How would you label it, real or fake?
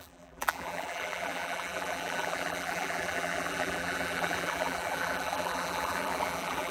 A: fake